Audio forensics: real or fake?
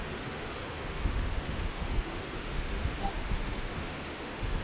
fake